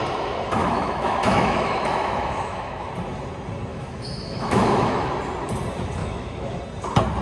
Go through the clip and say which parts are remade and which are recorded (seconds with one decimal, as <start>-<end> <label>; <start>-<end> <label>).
0.0-0.6 recorded; 0.6-2.9 remade; 2.9-3.7 recorded; 3.7-5.1 remade; 5.1-6.0 recorded; 6.0-6.6 remade; 6.6-7.2 recorded